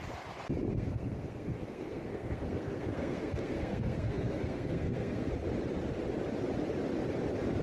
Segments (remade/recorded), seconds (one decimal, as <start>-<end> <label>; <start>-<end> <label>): 0.0-0.7 recorded; 0.7-5.3 remade; 5.3-7.6 recorded